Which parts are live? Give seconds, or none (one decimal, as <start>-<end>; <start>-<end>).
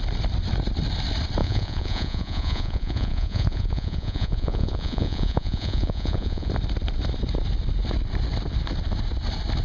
0.0-1.4; 6.5-9.6